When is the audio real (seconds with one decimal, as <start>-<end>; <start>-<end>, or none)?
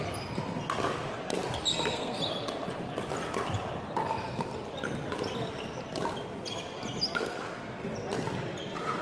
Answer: 0.0-1.7; 2.2-9.0